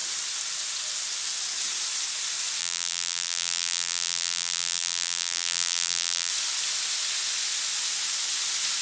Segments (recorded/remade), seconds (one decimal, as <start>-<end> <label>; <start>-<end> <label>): 0.0-2.6 recorded; 2.6-6.3 remade; 6.3-8.8 recorded

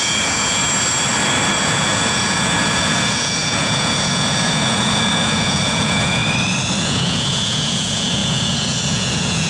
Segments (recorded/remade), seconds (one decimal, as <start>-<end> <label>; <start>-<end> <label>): 0.0-0.6 remade; 0.6-1.6 recorded; 1.6-6.2 remade; 6.2-6.8 recorded; 6.8-9.5 remade

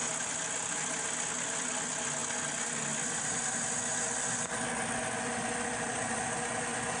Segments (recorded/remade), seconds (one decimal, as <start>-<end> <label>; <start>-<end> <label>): 0.0-7.0 recorded

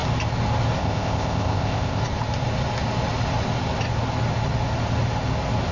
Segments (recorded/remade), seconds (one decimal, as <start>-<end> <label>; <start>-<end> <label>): 0.0-0.8 recorded; 0.8-2.0 remade; 2.0-5.7 recorded